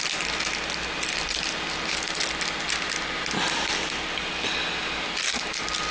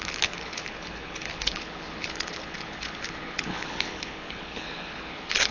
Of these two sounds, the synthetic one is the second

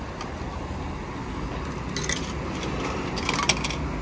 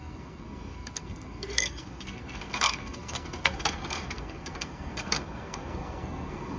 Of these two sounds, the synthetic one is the second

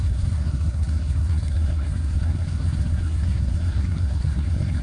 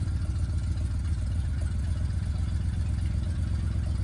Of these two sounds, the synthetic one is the first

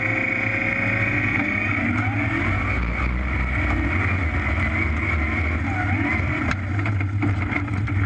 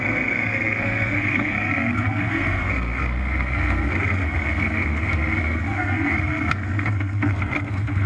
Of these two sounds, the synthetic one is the second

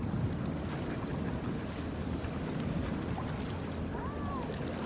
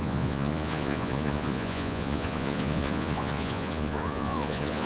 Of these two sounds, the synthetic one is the second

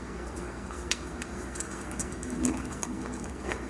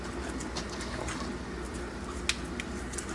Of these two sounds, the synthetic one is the first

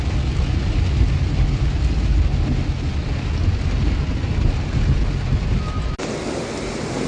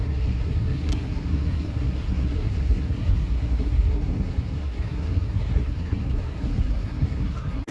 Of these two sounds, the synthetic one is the second